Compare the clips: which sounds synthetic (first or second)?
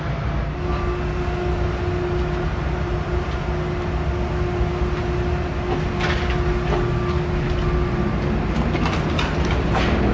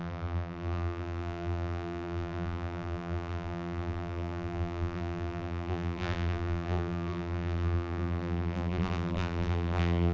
second